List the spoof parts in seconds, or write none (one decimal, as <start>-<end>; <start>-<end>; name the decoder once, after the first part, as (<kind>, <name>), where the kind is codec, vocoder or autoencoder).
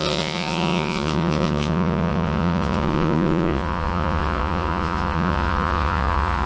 0.0-6.5 (vocoder, Vocos)